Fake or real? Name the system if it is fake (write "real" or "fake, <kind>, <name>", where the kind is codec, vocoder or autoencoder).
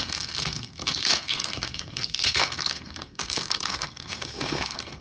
fake, codec, SNAC